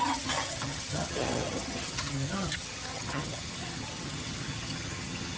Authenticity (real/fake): fake